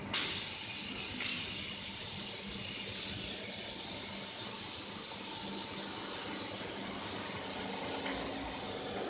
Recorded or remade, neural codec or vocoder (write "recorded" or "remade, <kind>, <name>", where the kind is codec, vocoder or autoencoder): recorded